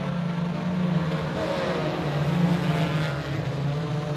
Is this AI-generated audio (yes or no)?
no